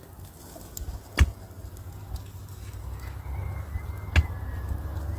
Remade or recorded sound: recorded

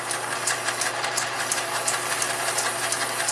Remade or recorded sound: remade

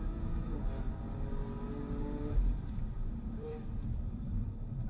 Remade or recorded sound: remade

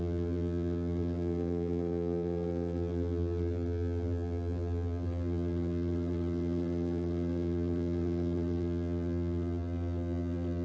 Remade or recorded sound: remade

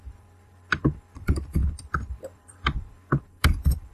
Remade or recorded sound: remade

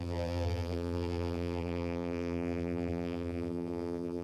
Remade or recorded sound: remade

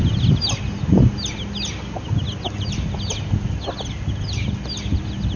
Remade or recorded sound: recorded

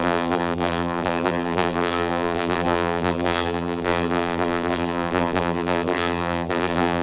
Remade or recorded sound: remade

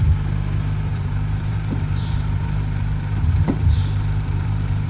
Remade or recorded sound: remade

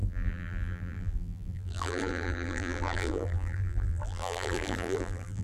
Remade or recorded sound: remade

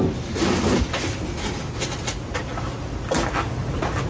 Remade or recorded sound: recorded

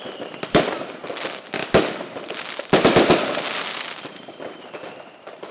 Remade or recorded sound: recorded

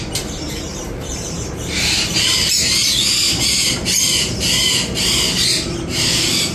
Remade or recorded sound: remade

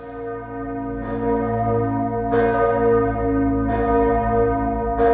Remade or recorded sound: recorded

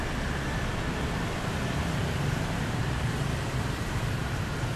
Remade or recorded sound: remade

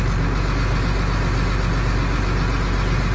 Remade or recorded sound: recorded